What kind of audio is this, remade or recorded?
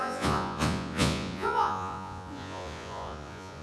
remade